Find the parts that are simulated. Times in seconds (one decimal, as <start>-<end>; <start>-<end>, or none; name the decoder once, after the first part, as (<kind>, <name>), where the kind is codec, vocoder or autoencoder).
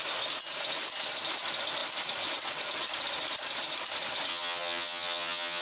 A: 4.3-5.6 (vocoder, HiFi-GAN)